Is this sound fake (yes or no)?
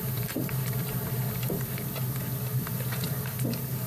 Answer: yes